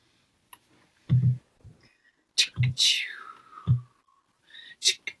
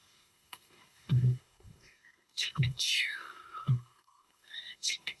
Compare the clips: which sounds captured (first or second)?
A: first